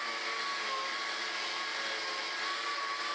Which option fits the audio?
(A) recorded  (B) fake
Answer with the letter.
A